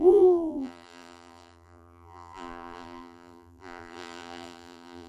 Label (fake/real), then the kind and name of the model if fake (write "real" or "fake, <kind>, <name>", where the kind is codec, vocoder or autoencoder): fake, vocoder, BigVGAN v2